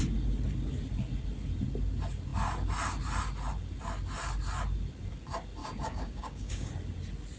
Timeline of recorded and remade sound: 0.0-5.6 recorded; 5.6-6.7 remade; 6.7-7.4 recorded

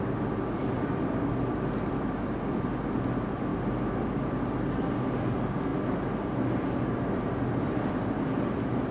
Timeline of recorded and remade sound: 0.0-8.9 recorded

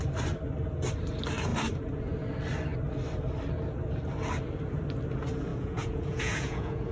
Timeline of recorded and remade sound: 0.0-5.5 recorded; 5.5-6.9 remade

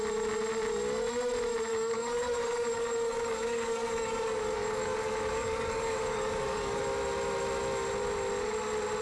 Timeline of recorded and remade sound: 0.0-1.7 recorded; 1.7-6.8 remade; 6.8-9.0 recorded

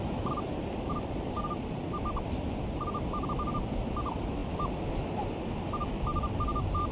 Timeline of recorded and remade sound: 0.0-6.9 recorded

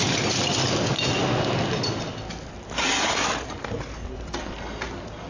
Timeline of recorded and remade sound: 0.0-5.3 recorded

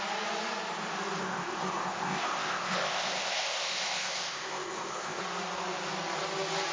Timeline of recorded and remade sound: 0.0-1.2 recorded; 1.2-5.2 remade; 5.2-6.7 recorded